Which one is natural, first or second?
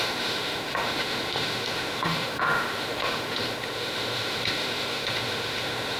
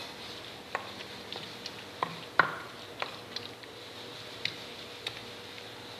second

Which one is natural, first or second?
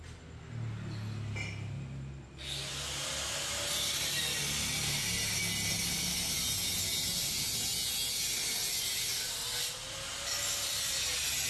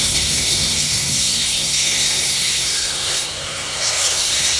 first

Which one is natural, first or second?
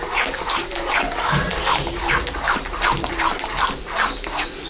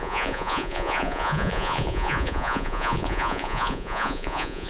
first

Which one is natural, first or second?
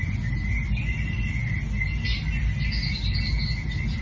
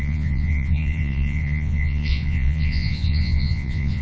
first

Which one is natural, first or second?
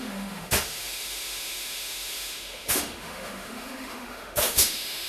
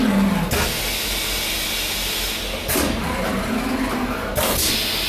second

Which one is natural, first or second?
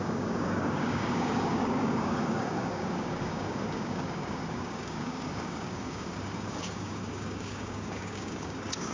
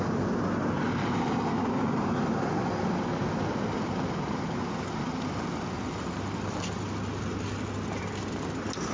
second